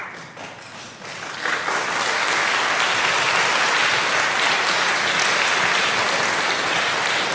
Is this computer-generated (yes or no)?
no